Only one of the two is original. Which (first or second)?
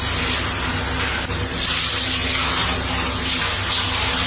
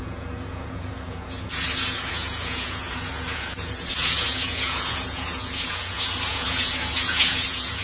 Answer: first